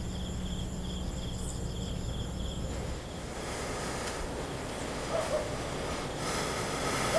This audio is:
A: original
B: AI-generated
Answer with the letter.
A